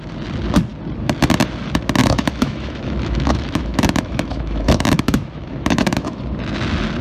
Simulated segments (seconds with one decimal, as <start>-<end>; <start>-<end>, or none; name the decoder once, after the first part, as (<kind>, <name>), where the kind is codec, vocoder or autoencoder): 2.0-6.2 (autoencoder, DAC-VAE)